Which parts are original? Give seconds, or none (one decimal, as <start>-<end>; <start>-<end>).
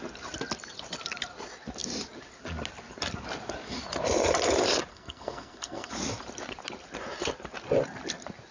0.0-4.9; 5.9-8.5